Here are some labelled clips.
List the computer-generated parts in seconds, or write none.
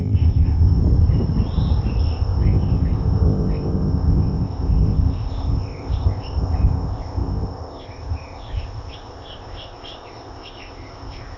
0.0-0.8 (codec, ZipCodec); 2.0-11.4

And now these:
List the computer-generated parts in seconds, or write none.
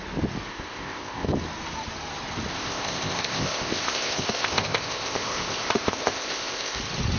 0.5-1.3 (codec, ZipCodec); 2.5-6.8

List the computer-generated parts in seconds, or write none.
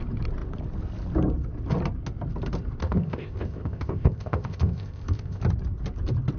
2.8-5.4 (codec, ZipCodec)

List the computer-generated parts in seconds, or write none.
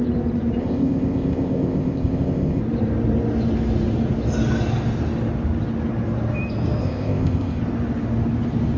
0.6-2.6 (codec, ZipCodec); 6.8-7.6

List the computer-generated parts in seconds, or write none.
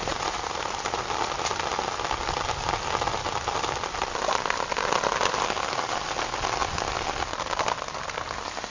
none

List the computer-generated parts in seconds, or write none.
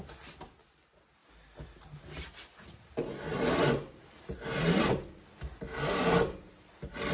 none